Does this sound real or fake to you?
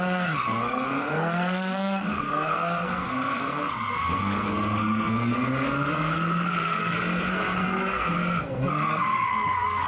fake